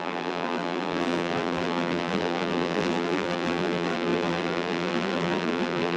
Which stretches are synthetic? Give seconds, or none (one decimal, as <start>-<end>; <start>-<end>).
0.0-6.0